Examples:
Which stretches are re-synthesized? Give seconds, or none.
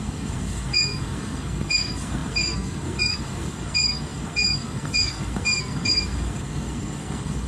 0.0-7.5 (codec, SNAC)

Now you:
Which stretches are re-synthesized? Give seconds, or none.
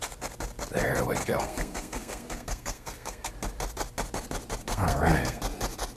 1.2-3.3 (codec, SNAC); 4.7-5.4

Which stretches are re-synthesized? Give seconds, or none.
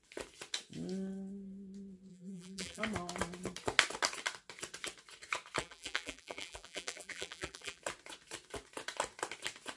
2.1-2.8 (vocoder, BigVGAN v2); 5.6-7.8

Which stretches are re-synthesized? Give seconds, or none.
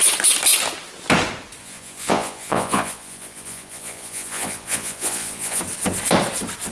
1.6-5.6 (vocoder, Vocos)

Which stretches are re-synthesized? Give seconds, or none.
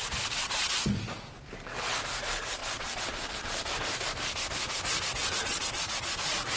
2.6-3.6 (vocoder, WaveNeXt); 5.2-5.8